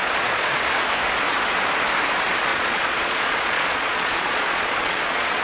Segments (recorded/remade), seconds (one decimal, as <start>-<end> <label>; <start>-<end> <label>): 0.0-0.6 remade; 0.6-2.5 recorded; 2.5-5.4 remade